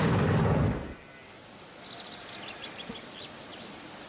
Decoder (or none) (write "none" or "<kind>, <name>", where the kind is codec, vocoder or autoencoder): none